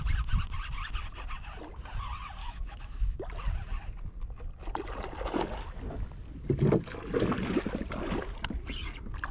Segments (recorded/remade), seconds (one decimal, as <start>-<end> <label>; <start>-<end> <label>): 0.0-2.4 recorded; 2.4-3.2 remade; 3.2-9.3 recorded